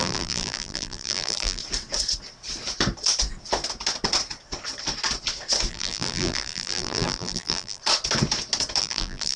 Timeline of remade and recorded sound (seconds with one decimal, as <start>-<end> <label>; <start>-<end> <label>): 0.0-1.6 remade; 1.6-5.7 recorded; 5.7-7.8 remade; 7.8-8.8 recorded; 8.8-9.4 remade